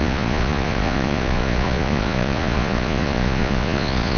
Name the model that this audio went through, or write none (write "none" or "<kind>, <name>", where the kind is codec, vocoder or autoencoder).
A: vocoder, Vocos